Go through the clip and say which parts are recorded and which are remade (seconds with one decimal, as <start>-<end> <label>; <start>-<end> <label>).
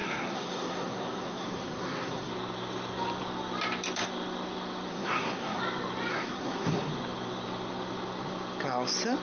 0.0-2.3 remade; 2.3-4.9 recorded; 4.9-5.6 remade; 5.6-6.1 recorded; 6.1-6.9 remade; 6.9-9.2 recorded